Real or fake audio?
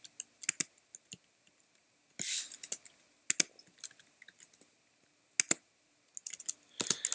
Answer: real